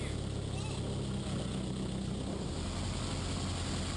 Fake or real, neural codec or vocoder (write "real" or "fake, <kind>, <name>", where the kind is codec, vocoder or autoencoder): real